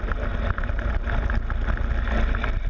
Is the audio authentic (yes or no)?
yes